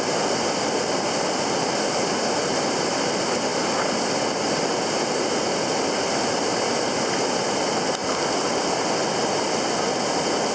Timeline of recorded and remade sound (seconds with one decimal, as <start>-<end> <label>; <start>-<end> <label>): 0.0-10.5 recorded